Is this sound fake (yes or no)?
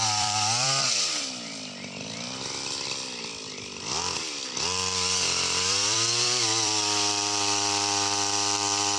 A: yes